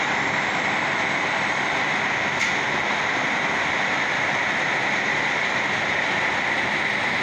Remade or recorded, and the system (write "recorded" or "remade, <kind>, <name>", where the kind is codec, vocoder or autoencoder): recorded